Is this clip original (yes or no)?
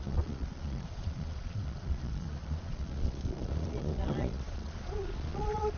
no